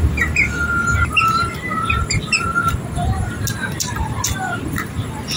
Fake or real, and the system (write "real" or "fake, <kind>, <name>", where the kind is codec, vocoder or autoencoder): real